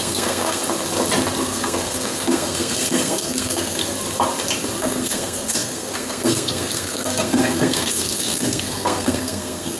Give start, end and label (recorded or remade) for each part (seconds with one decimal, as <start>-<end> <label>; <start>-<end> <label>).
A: 0.0-0.6 remade; 0.6-1.4 recorded; 1.4-3.8 remade; 3.8-4.8 recorded; 4.8-9.8 remade